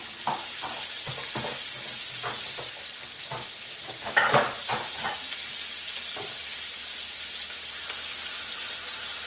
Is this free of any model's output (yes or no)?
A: yes